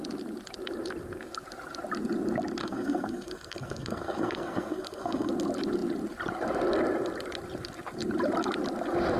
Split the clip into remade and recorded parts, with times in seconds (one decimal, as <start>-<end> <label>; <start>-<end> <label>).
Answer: 0.0-2.6 recorded; 2.6-5.3 remade; 5.3-9.2 recorded